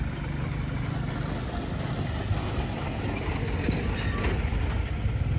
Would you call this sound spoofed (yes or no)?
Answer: no